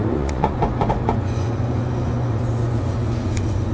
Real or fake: fake